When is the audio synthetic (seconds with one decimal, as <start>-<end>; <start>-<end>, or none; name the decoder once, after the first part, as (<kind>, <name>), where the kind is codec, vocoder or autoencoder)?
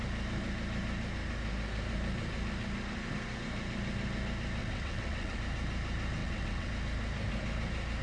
4.6-5.4 (vocoder, WaveNeXt); 6.2-6.7